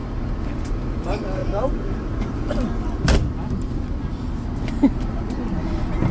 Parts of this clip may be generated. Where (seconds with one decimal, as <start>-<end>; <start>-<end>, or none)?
none